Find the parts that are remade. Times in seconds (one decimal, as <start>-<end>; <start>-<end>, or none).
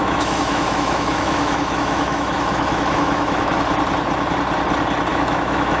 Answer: 0.0-3.5; 5.1-5.8